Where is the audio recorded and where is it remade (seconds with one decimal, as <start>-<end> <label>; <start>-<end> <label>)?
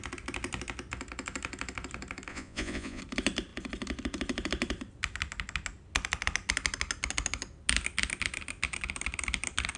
0.0-2.3 recorded; 2.3-3.0 remade; 3.0-9.8 recorded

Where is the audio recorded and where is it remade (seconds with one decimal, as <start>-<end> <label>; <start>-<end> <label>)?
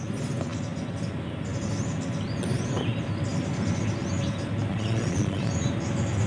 0.0-4.7 recorded; 4.7-5.5 remade; 5.5-6.3 recorded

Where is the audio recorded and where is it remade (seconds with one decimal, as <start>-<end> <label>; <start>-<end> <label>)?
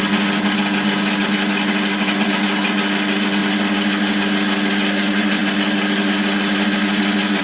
0.0-7.4 recorded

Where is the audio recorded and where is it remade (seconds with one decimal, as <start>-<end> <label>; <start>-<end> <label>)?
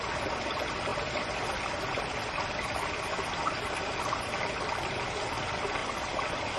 0.0-6.6 recorded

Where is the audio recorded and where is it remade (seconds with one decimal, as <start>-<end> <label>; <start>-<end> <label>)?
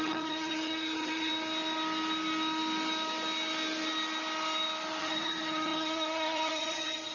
0.0-1.3 remade; 1.3-5.0 recorded; 5.0-7.1 remade